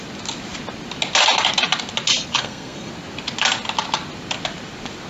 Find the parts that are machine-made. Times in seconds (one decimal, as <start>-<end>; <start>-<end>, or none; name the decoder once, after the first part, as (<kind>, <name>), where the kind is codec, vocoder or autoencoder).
2.3-2.9 (codec, SNAC)

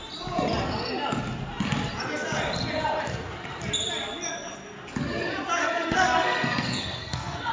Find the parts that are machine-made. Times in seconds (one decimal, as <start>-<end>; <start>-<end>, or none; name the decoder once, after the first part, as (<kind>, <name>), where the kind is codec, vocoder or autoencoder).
5.6-7.5 (codec, SNAC)

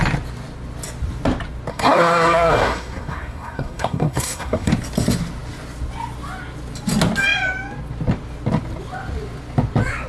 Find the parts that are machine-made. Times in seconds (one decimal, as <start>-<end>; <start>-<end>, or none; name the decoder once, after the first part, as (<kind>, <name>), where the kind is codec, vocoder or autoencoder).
1.7-4.7 (codec, SNAC)

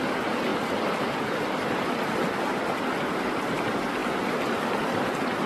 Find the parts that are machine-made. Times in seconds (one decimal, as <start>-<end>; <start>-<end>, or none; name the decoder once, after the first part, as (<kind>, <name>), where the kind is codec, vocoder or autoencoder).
none

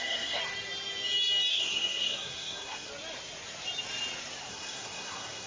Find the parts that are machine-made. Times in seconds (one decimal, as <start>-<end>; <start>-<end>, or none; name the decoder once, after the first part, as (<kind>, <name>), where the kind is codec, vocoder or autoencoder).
0.0-0.4 (codec, SNAC); 1.5-2.9; 4.5-5.5

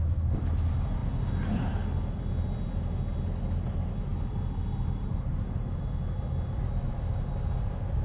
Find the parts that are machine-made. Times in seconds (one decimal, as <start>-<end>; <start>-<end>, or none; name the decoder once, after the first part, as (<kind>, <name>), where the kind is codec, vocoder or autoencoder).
none

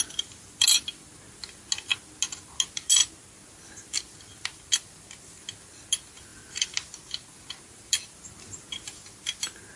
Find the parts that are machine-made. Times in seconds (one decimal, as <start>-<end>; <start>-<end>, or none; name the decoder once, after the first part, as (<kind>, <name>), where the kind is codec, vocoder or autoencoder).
none